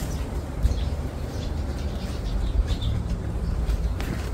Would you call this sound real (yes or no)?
no